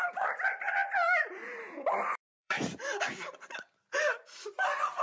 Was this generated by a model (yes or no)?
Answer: yes